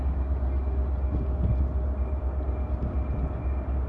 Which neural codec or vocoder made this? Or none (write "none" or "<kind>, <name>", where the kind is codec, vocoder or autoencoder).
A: none